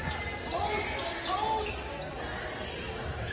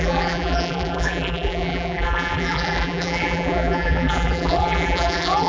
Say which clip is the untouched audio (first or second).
first